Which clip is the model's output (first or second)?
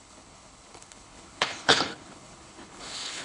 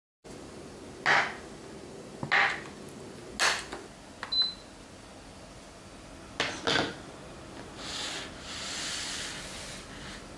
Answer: first